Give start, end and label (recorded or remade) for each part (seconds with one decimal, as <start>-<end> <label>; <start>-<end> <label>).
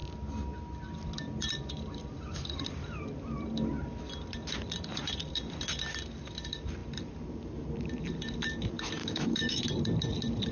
0.0-9.0 recorded; 9.0-9.6 remade; 9.6-10.5 recorded